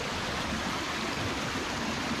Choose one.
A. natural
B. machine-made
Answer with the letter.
A